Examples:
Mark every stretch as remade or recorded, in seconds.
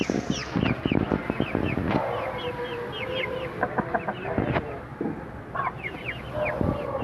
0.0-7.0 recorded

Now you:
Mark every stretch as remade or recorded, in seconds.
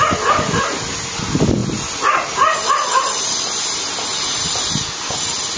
0.0-5.6 recorded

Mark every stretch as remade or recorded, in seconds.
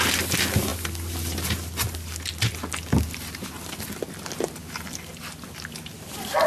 0.0-6.5 recorded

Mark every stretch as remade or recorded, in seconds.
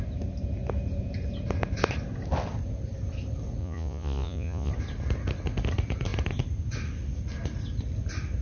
0.0-3.6 recorded; 3.6-4.7 remade; 4.7-8.4 recorded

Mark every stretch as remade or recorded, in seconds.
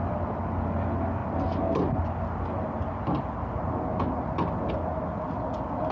0.0-5.9 recorded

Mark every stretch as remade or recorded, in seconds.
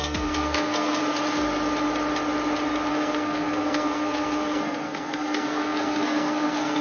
0.0-1.0 remade; 1.0-2.9 recorded; 2.9-6.8 remade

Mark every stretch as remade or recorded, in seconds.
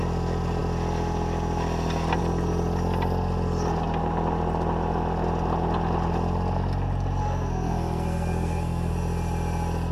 0.0-7.2 recorded; 7.2-8.9 remade; 8.9-9.9 recorded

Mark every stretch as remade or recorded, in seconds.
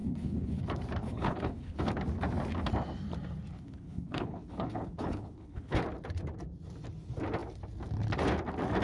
0.0-0.6 remade; 0.6-1.0 recorded; 1.0-1.8 remade; 1.8-3.5 recorded; 3.5-5.8 remade; 5.8-8.8 recorded